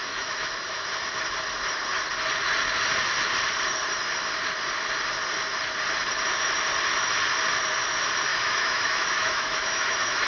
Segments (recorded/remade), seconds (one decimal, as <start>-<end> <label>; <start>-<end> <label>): 0.0-0.9 remade; 0.9-8.3 recorded; 8.3-10.3 remade